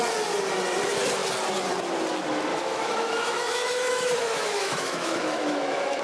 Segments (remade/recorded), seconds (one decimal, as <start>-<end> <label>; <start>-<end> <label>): 0.0-2.5 recorded; 2.5-6.0 remade